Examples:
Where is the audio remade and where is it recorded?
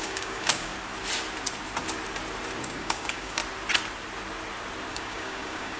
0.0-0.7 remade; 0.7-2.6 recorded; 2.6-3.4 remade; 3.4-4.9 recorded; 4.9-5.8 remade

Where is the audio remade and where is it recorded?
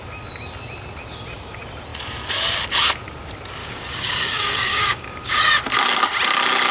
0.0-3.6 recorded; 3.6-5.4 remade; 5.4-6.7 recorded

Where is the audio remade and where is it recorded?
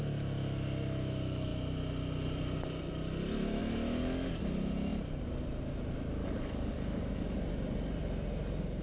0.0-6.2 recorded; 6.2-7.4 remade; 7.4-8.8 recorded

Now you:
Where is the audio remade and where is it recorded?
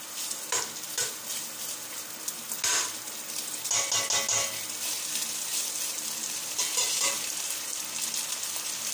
0.0-8.9 recorded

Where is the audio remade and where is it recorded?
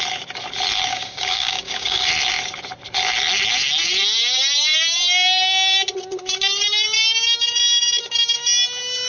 0.0-0.9 recorded; 0.9-2.1 remade; 2.1-9.1 recorded